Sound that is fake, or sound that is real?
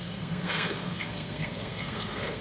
fake